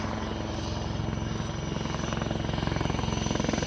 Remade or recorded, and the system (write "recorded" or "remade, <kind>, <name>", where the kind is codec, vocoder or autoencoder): recorded